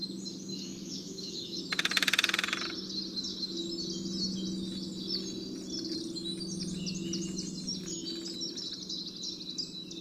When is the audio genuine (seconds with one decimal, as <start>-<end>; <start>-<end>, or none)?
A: 0.0-0.5; 1.6-10.0